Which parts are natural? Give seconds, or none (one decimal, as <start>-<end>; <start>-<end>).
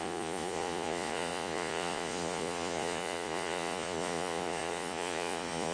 none